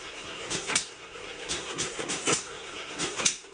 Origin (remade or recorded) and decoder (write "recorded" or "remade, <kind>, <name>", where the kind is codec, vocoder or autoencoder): remade, codec, SNAC